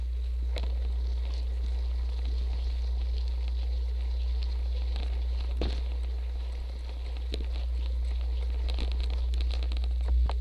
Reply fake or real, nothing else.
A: real